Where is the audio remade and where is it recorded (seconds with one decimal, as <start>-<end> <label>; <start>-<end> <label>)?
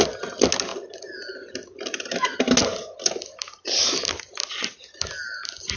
0.0-5.8 recorded